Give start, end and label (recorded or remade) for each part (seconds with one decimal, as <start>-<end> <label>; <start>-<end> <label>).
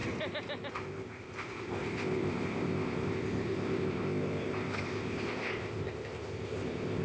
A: 0.0-0.7 recorded; 0.7-7.0 remade